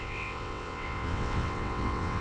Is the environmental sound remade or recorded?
remade